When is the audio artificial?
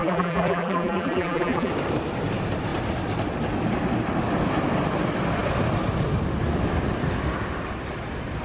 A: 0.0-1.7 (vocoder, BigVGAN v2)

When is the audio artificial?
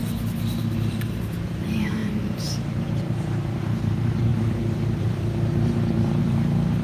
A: 0.6-6.8 (vocoder, BigVGAN v2)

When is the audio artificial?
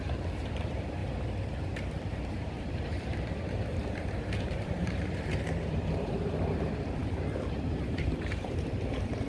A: 0.0-1.0 (vocoder, BigVGAN v2); 2.3-9.3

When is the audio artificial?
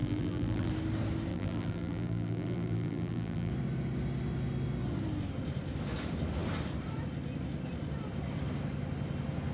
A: 0.0-0.7 (vocoder, BigVGAN v2); 1.3-3.5